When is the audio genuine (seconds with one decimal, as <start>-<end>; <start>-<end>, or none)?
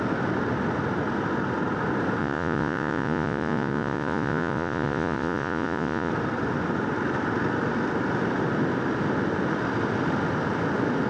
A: 0.0-2.2; 6.1-11.1